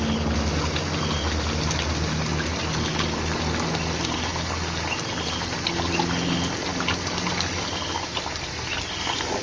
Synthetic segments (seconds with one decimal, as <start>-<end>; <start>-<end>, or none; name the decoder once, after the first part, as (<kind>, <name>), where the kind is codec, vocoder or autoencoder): none